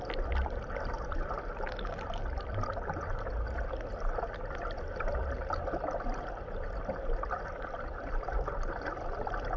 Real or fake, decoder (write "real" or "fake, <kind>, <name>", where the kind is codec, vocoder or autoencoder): real